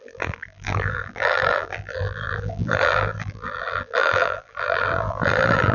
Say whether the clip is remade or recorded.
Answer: remade